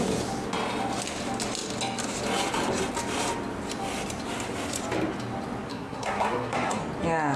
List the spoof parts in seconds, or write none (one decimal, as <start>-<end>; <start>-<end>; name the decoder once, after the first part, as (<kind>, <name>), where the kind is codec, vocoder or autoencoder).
5.7-6.8 (codec, SNAC)